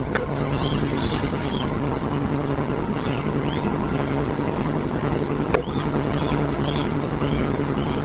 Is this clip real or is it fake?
fake